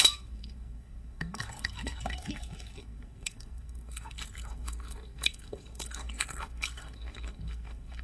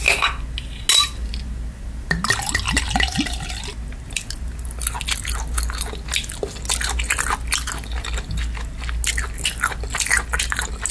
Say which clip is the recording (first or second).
second